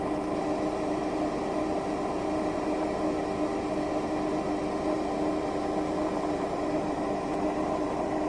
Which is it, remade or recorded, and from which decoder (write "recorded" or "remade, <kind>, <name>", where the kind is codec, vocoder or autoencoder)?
recorded